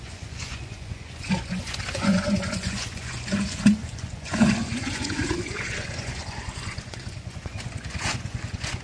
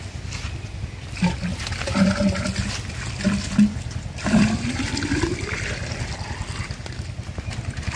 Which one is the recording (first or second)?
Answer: second